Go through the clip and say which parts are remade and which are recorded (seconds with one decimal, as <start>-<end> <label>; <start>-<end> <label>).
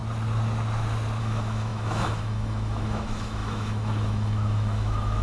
0.0-1.2 recorded; 1.2-5.2 remade